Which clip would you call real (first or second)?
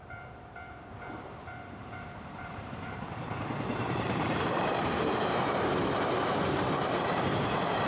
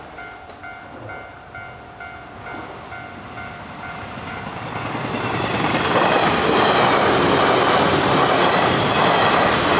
second